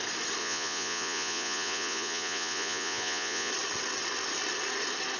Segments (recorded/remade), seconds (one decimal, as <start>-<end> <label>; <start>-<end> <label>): 0.0-0.4 recorded; 0.4-3.5 remade; 3.5-5.2 recorded